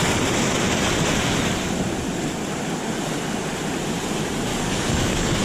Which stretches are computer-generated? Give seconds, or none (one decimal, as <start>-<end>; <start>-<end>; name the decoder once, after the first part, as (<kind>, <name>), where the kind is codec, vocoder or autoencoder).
4.5-5.4 (codec, DAC)